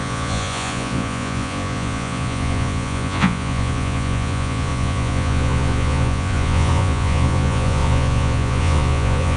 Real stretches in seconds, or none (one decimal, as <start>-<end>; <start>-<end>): none